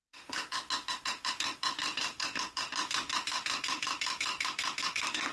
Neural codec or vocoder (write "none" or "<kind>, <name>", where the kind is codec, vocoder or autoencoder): autoencoder, DAC-VAE